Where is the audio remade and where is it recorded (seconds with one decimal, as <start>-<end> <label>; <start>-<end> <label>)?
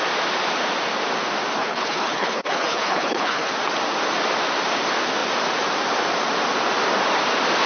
0.0-1.5 recorded; 1.5-3.5 remade; 3.5-7.7 recorded